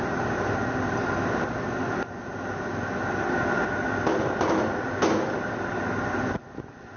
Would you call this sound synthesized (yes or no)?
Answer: no